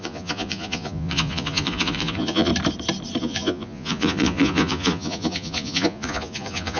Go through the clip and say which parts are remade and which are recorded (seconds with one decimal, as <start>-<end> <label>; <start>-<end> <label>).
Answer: 0.0-2.5 remade; 2.5-3.2 recorded; 3.2-6.8 remade